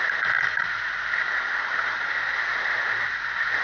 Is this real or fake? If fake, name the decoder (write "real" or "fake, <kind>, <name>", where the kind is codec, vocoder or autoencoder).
real